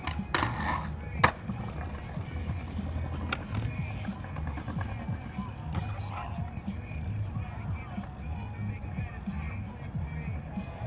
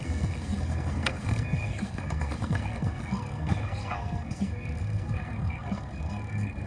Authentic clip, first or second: first